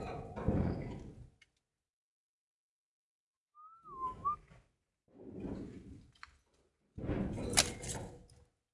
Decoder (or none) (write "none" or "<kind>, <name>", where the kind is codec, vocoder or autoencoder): none